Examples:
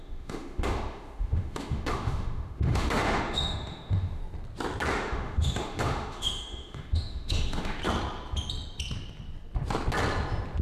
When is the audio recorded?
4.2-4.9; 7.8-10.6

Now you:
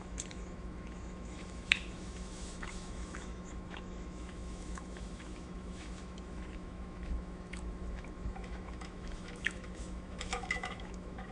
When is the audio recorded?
none

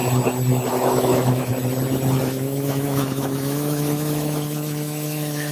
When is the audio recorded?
0.0-0.7; 1.5-2.2

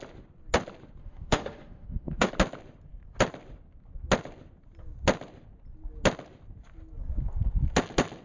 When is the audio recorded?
0.0-1.0; 2.3-8.2

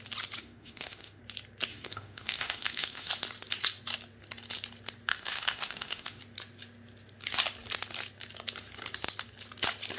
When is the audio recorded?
0.0-0.4; 1.2-1.7; 3.1-5.1; 6.2-10.0

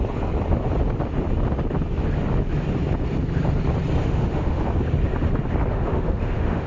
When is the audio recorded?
0.0-4.0; 4.6-5.7

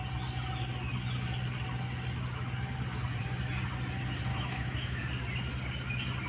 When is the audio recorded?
0.0-4.3; 5.0-6.3

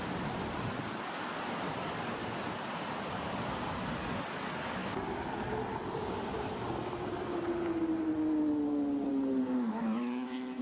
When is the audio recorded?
0.0-9.5